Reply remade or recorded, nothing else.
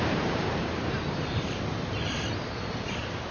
remade